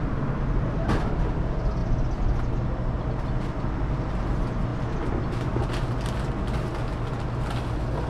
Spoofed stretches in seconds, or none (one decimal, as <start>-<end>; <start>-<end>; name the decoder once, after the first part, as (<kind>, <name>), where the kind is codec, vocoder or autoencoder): none